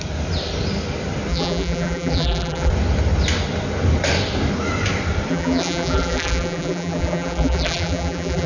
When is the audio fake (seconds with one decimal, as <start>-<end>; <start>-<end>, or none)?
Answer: 1.3-2.7; 5.3-8.5